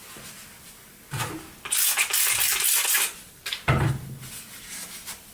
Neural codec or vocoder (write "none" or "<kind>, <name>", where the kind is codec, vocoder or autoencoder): none